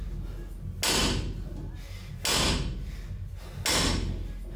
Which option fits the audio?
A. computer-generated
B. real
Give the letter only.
B